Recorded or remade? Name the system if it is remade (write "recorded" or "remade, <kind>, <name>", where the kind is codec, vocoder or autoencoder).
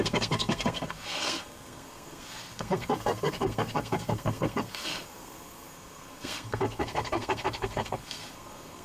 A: remade, codec, SNAC